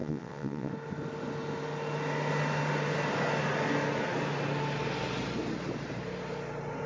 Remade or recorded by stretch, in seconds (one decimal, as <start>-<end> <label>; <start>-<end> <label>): 0.0-0.7 remade; 0.7-6.9 recorded